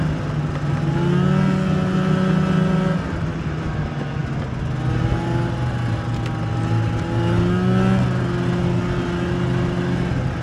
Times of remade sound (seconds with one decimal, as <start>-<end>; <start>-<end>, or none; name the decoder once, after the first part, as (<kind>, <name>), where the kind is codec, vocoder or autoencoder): none